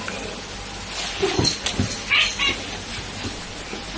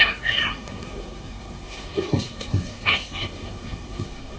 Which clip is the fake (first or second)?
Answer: second